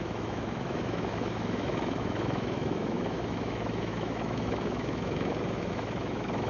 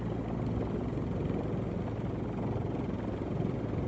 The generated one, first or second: first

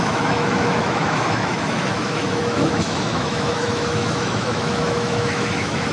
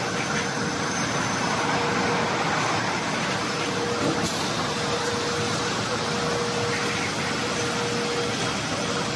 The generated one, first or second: first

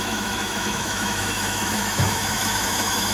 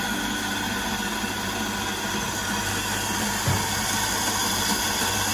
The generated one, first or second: first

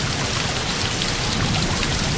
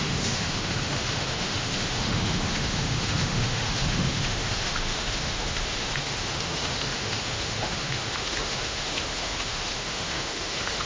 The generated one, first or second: second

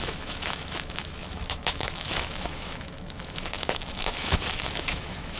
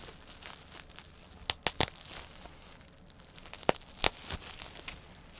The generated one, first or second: first